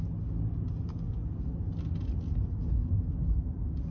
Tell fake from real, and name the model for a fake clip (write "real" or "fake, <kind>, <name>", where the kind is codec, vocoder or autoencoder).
real